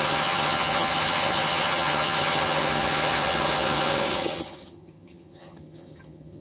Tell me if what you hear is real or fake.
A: fake